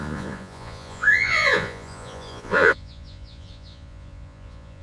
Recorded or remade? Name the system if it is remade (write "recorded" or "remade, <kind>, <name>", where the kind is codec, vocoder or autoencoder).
remade, vocoder, Vocos